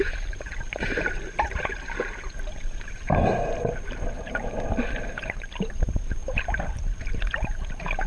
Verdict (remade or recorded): remade